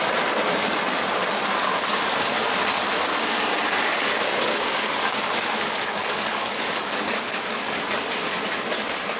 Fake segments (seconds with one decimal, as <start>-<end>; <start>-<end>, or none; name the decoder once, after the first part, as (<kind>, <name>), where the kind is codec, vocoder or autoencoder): 3.9-7.8 (codec, DAC)